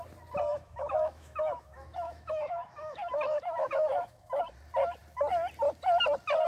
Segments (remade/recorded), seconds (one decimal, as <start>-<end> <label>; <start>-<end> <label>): 0.0-0.5 recorded; 0.5-4.4 remade; 4.4-6.5 recorded